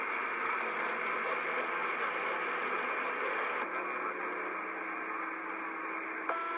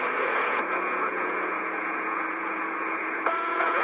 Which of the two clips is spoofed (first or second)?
second